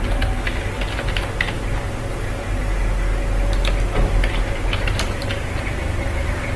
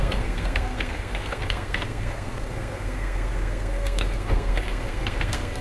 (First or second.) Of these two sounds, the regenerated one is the second